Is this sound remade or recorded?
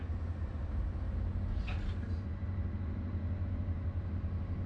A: recorded